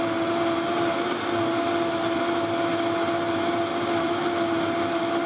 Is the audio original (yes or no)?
yes